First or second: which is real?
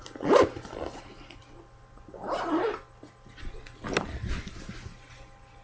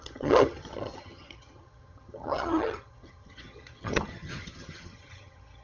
first